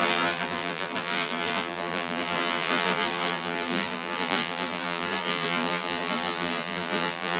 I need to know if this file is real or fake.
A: fake